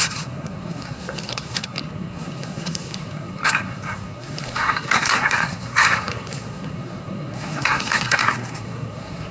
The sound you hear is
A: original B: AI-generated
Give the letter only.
B